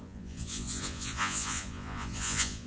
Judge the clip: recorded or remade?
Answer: remade